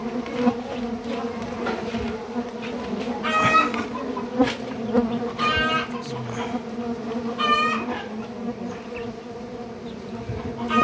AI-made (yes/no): no